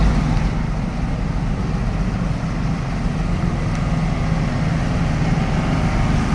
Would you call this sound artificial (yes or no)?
no